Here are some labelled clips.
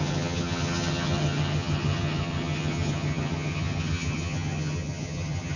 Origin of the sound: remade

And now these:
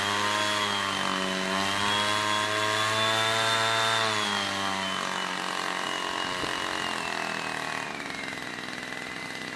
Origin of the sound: recorded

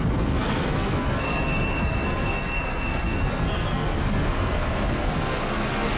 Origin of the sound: remade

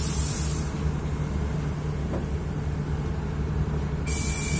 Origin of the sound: recorded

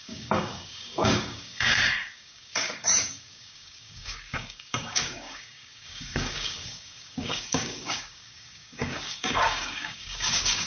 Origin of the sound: remade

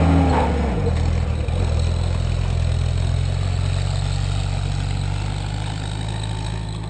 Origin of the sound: recorded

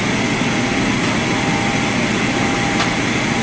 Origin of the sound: recorded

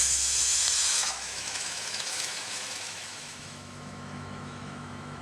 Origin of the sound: remade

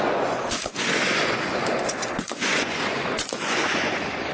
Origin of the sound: remade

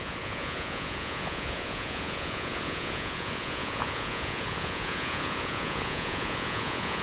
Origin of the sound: remade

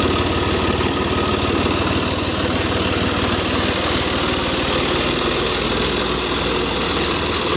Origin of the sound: recorded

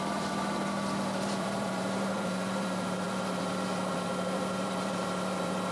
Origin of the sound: remade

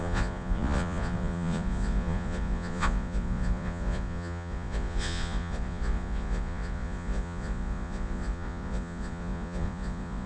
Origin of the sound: remade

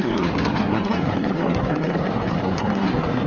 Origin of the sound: remade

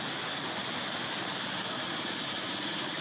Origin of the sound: recorded